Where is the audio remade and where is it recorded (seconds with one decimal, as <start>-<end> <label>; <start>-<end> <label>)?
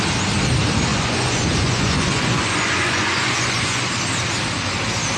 0.0-0.9 recorded; 0.9-3.9 remade; 3.9-5.2 recorded